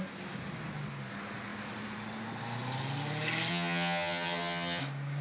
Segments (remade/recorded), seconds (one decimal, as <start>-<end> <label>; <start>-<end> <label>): 0.0-3.5 recorded; 3.5-4.8 remade; 4.8-5.2 recorded